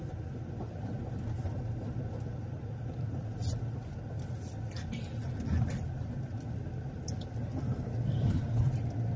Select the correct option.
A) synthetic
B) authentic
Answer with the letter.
B